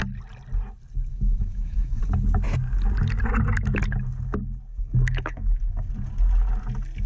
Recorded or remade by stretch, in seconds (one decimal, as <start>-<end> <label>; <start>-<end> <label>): 0.0-1.1 recorded; 1.1-2.0 remade; 2.0-4.7 recorded; 4.7-5.9 remade; 5.9-7.1 recorded